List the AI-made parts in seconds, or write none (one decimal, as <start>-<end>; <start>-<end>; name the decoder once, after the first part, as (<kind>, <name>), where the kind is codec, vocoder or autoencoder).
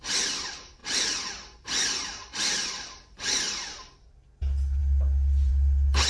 none